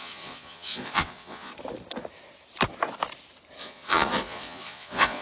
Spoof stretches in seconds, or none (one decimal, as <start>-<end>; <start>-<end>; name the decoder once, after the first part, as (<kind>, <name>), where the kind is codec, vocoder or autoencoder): 0.0-1.5 (vocoder, Vocos); 3.6-5.2